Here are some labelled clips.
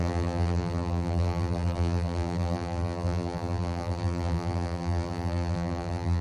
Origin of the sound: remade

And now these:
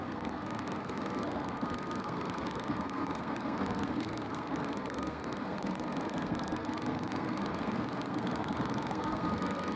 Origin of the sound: remade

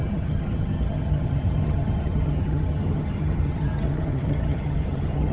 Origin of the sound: remade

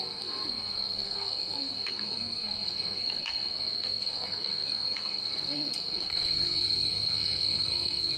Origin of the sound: remade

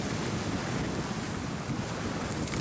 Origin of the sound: recorded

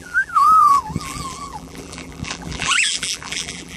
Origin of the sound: remade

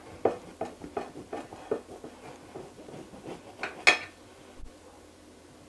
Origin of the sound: recorded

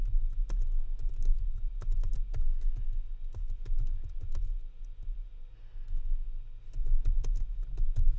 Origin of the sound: recorded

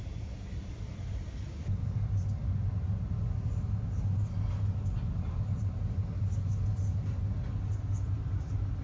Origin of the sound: recorded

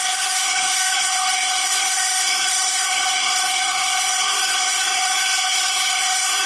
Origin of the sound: remade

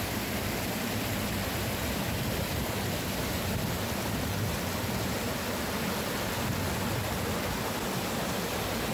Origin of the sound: recorded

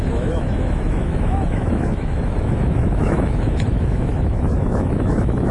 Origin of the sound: remade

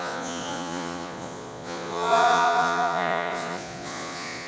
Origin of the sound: remade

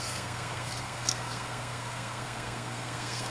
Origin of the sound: remade